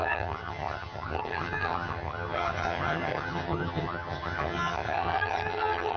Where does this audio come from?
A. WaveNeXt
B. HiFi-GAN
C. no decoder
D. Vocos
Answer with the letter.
B